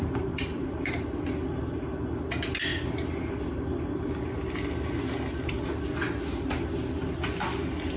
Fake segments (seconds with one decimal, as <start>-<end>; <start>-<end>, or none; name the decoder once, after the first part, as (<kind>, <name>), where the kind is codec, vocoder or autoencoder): none